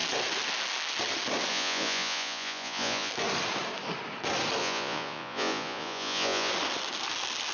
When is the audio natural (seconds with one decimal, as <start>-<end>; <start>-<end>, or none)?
0.0-1.5; 3.1-4.6; 6.5-7.5